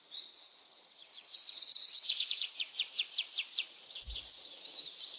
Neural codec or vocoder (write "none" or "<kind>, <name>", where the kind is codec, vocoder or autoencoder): vocoder, Vocos